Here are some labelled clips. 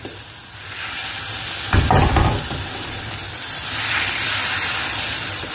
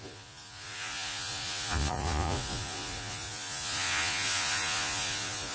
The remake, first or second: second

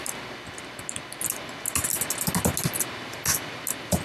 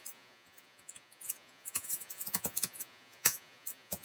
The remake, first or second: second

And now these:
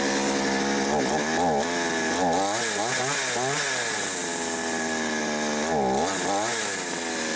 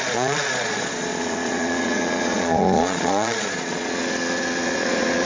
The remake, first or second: second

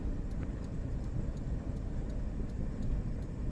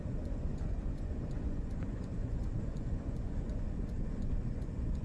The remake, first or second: second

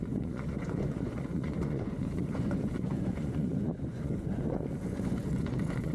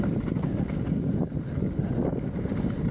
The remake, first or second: first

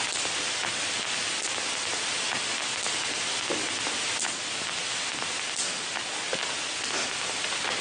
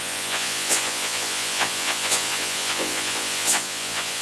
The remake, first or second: second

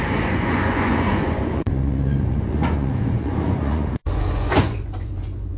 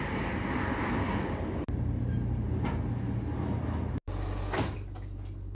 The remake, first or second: first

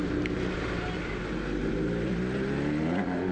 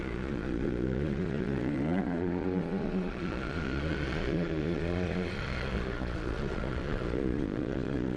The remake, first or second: second